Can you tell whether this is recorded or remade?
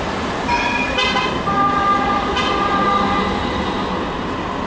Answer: recorded